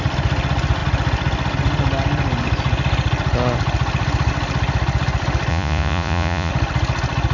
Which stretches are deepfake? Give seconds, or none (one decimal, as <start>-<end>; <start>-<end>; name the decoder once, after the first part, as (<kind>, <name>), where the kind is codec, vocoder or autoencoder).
5.5-6.5 (vocoder, Vocos)